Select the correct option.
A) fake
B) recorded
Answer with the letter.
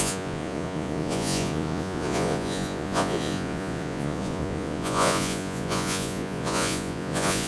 A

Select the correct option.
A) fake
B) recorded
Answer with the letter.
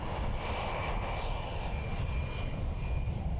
B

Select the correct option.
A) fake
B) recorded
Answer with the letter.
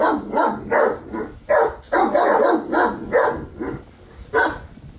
B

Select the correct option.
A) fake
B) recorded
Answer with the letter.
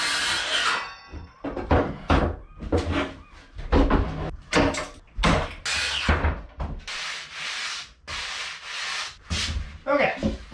B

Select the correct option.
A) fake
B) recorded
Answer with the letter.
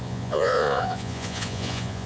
A